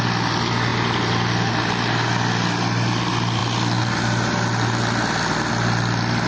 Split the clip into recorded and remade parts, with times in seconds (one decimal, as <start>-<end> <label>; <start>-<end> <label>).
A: 0.0-6.3 recorded

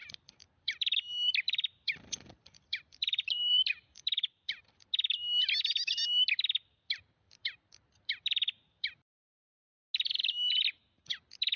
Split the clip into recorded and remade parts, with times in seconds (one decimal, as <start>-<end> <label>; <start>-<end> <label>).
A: 0.0-4.6 remade; 4.6-7.4 recorded; 7.4-8.9 remade; 8.9-11.6 recorded

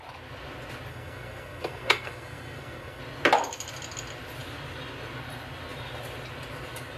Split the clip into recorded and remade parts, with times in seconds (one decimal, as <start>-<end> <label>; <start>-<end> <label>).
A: 0.0-0.9 recorded; 0.9-3.0 remade; 3.0-7.0 recorded

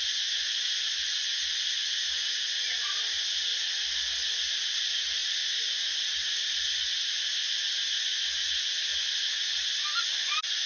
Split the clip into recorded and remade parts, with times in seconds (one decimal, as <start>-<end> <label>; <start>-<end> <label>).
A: 0.0-10.7 recorded

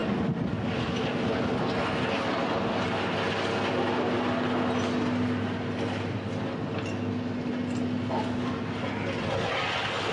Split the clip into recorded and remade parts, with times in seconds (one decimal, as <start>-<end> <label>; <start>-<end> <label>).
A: 0.0-10.1 recorded

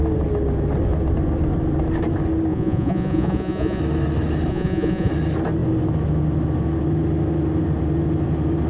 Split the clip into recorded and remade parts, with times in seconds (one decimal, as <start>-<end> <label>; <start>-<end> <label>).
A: 0.0-2.5 recorded; 2.5-3.8 remade; 3.8-4.5 recorded; 4.5-5.1 remade; 5.1-8.7 recorded

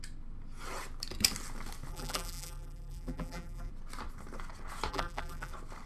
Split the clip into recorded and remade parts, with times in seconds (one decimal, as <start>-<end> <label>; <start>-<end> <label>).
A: 0.0-1.9 recorded; 1.9-3.7 remade; 3.7-4.9 recorded; 4.9-5.5 remade; 5.5-5.9 recorded

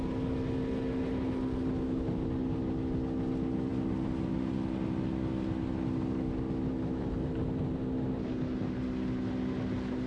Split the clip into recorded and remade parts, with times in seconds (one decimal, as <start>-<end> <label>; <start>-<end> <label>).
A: 0.0-10.1 recorded